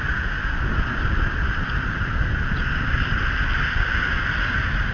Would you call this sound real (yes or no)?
yes